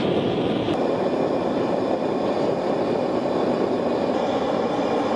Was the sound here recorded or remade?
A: recorded